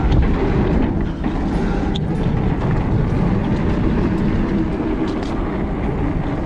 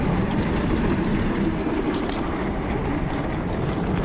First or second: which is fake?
second